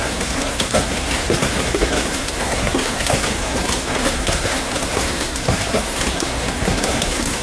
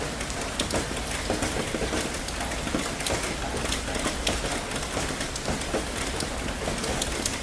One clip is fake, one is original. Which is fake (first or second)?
first